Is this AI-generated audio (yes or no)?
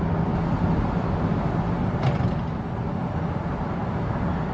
no